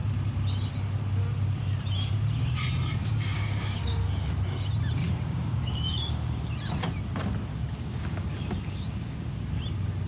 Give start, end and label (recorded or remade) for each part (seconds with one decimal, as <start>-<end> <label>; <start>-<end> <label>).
0.0-3.0 recorded; 3.0-4.0 remade; 4.0-5.0 recorded; 5.0-6.5 remade; 6.5-7.5 recorded; 7.5-9.6 remade; 9.6-10.1 recorded